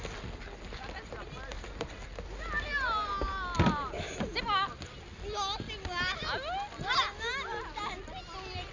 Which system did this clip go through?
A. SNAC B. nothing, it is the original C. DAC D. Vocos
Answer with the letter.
B